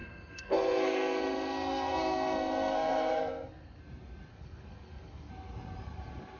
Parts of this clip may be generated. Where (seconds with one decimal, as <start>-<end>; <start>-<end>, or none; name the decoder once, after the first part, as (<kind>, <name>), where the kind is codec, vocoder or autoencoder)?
0.0-3.8 (codec, SNAC); 4.3-5.3